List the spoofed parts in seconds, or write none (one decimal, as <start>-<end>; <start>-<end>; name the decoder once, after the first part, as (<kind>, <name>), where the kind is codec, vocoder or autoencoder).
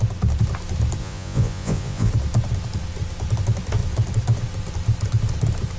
1.0-2.1 (vocoder, Vocos)